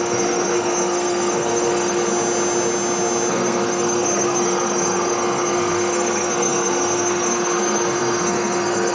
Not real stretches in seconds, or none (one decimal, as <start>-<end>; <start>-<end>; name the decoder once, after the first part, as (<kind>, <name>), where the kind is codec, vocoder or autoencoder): 0.0-2.1 (codec, SNAC); 3.3-8.9